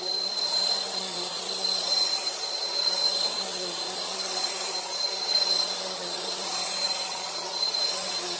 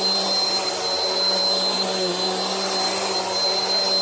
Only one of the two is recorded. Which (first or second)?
second